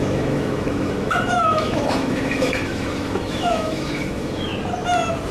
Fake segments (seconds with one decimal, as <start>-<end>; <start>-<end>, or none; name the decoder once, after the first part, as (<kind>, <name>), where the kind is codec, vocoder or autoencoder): 0.0-4.5 (autoencoder, DAC-VAE)